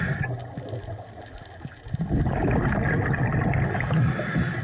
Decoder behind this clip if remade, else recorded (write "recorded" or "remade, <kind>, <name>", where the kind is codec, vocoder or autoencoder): recorded